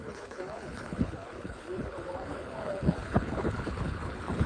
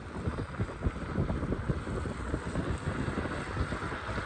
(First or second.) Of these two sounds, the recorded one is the second